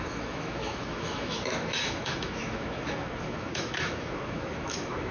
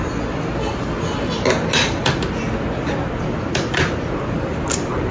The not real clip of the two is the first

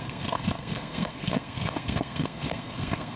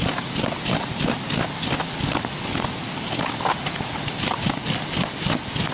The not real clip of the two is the first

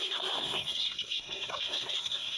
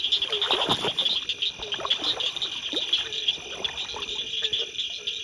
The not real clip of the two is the first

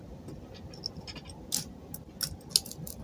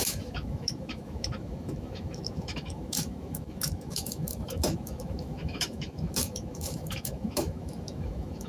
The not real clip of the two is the second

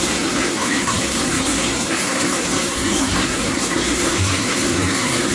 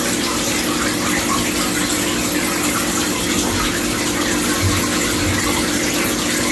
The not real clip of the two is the first